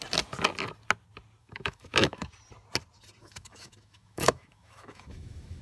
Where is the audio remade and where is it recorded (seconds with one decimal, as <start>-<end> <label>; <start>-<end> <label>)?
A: 0.0-1.4 recorded; 1.4-2.3 remade; 2.3-3.2 recorded; 3.2-5.6 remade

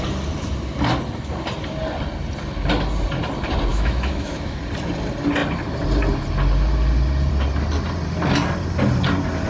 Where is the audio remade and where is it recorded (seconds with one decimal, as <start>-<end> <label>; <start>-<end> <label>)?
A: 0.0-3.7 recorded; 3.7-4.6 remade; 4.6-9.5 recorded

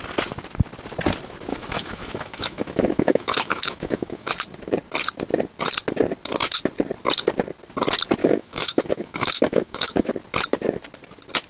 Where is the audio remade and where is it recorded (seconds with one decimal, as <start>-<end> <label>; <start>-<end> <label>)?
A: 0.0-1.5 recorded; 1.5-4.3 remade; 4.3-8.2 recorded; 8.2-10.1 remade; 10.1-11.5 recorded